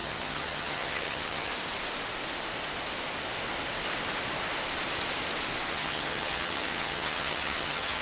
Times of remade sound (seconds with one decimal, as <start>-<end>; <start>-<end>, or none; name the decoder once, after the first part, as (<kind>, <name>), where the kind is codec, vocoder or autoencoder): 0.0-1.5 (vocoder, HiFi-GAN); 5.7-8.0